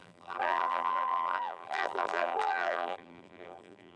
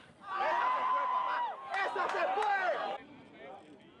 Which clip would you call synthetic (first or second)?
first